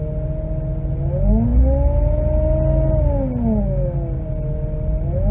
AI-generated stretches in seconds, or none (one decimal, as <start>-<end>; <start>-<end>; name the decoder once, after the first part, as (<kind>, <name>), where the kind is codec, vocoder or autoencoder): none